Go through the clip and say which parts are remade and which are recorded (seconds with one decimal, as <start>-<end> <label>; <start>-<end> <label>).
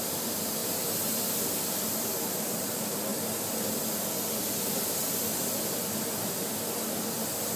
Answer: 0.0-0.6 remade; 0.6-1.9 recorded; 1.9-3.1 remade; 3.1-7.6 recorded